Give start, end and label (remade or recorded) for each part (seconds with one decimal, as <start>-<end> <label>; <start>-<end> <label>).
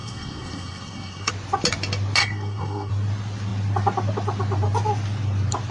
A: 0.0-1.3 remade; 1.3-2.2 recorded; 2.2-2.9 remade; 2.9-5.7 recorded